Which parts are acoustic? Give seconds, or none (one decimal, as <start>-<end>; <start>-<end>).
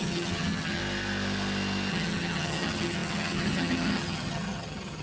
0.8-1.9